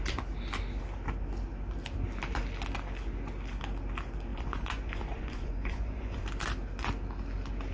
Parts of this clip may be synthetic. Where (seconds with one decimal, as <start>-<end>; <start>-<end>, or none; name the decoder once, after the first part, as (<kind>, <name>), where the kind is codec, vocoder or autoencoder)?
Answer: 4.3-6.2 (vocoder, Vocos)